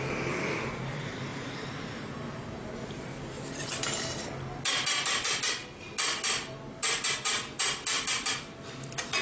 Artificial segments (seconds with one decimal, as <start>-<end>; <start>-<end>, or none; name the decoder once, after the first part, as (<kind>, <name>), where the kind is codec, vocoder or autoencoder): 1.3-2.7 (vocoder, BigVGAN v2)